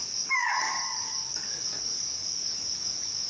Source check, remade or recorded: remade